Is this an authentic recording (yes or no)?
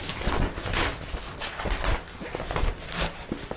yes